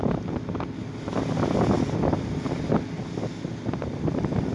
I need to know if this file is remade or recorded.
recorded